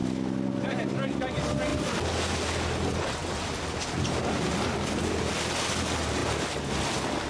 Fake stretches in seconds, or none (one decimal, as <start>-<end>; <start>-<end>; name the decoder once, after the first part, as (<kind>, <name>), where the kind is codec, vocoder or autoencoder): none

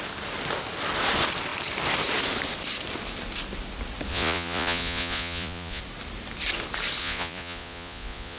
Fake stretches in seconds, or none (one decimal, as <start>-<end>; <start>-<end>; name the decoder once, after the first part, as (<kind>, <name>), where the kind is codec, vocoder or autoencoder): 4.1-5.8 (vocoder, Vocos); 7.0-8.4

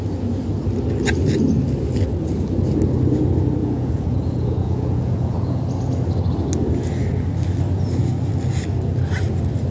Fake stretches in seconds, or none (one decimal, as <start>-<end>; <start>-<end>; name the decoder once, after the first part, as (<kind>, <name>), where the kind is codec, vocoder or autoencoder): 3.6-5.6 (vocoder, Vocos)

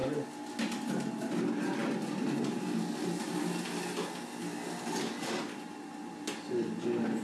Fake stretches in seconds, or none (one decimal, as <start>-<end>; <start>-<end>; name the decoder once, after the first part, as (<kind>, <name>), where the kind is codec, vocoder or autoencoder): none